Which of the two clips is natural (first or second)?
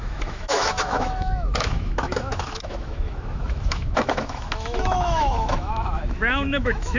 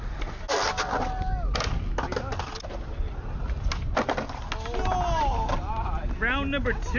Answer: second